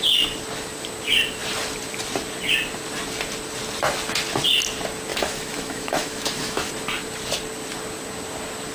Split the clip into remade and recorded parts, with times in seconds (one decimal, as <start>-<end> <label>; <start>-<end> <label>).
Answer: 0.0-5.1 recorded; 5.1-6.7 remade; 6.7-8.7 recorded